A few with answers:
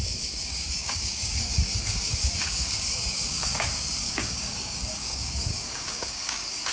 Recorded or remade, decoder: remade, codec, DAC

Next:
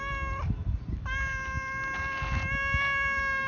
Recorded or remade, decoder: recorded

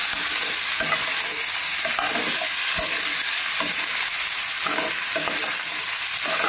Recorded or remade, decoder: recorded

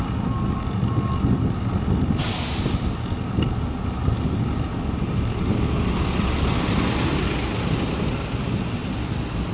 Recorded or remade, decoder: recorded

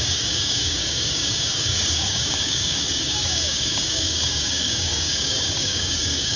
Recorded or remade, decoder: remade, codec, DAC